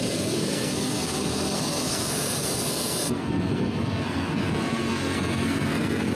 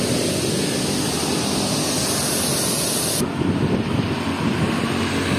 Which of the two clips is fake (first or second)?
first